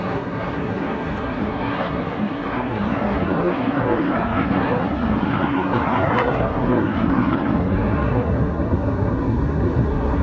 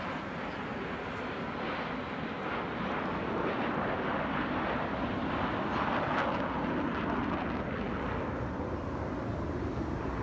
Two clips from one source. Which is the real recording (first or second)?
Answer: second